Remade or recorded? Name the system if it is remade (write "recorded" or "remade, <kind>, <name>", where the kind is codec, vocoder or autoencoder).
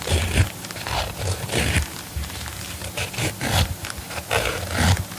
remade, vocoder, BigVGAN v2